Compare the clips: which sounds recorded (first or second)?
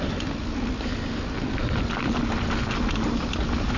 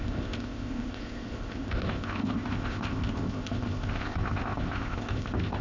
first